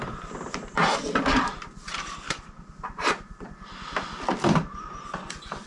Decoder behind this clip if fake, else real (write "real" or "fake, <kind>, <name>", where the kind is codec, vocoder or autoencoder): fake, vocoder, BigVGAN v2